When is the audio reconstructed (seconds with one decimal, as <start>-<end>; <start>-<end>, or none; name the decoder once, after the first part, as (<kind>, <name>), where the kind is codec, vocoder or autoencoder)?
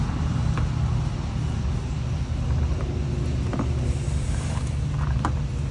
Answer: none